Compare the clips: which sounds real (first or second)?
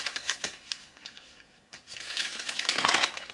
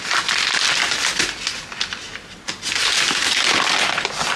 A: second